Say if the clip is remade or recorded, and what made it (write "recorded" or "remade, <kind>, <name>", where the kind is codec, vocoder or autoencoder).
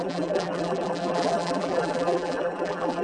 remade, vocoder, BigVGAN v2